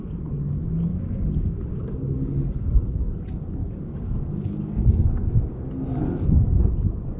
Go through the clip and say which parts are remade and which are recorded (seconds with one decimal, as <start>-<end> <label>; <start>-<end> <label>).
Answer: 0.0-0.9 recorded; 0.9-2.9 remade; 2.9-3.6 recorded; 3.6-5.6 remade; 5.6-7.2 recorded